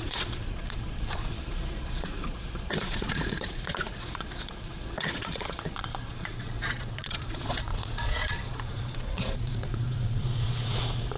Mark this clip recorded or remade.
remade